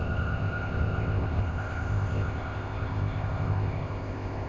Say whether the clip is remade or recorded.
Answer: remade